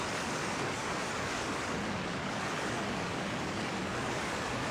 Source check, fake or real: fake